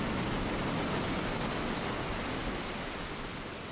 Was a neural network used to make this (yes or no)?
no